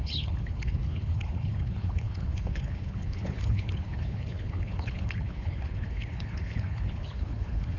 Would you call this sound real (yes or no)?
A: no